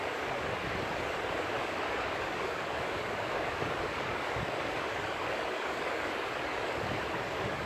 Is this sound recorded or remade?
remade